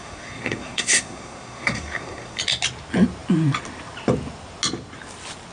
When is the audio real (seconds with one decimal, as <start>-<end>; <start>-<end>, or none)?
2.4-5.5